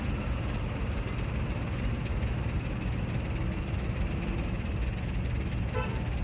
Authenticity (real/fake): real